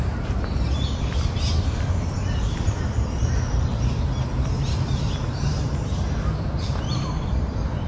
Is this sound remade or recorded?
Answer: remade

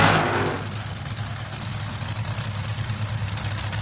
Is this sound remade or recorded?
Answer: recorded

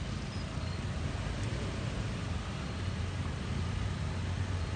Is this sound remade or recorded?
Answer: recorded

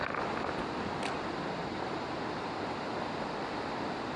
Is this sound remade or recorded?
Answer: recorded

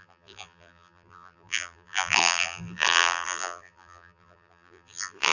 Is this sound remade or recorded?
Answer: remade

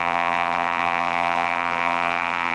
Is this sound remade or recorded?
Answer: remade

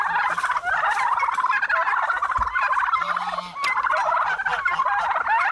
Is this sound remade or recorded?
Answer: recorded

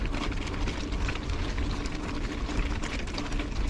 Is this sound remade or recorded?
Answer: recorded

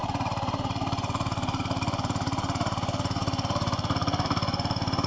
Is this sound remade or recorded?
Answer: remade